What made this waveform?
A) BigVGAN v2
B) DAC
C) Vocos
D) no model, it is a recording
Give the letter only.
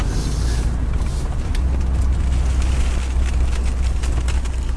D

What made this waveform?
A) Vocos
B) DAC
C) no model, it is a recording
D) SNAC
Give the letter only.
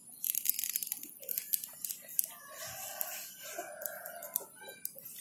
C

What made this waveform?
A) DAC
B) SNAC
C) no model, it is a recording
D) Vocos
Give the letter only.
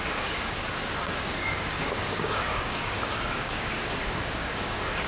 A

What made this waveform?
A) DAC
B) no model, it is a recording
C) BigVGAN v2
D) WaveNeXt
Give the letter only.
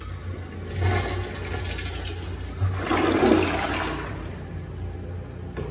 B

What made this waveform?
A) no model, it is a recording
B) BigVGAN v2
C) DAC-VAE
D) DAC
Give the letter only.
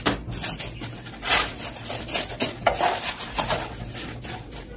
A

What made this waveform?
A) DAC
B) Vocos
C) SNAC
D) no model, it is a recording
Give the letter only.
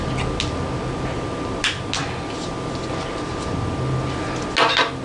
D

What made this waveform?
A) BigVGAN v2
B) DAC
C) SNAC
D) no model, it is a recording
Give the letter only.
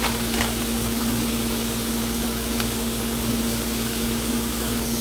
B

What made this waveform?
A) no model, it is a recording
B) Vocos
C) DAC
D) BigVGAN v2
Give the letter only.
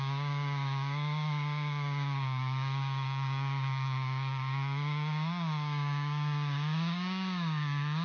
C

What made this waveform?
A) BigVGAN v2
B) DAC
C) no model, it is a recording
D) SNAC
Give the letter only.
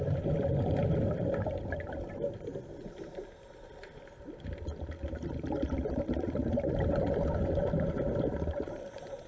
C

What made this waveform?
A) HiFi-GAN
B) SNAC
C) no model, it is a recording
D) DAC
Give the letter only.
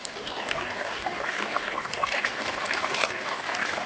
D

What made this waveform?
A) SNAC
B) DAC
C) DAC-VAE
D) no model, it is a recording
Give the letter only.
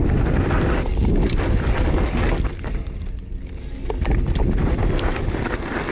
D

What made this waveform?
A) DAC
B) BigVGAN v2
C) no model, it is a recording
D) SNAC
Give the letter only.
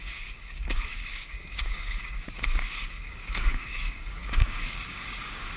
A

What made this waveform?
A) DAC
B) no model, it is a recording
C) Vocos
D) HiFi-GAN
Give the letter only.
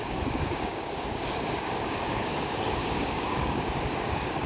A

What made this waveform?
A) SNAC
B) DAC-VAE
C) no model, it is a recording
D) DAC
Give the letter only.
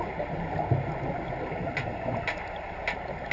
C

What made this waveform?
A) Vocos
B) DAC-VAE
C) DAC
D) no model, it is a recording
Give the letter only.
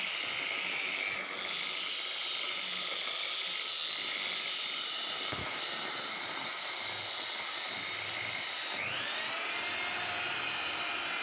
D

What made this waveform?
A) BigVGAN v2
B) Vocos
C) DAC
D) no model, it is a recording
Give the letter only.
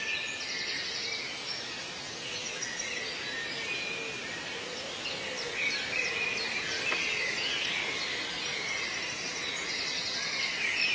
D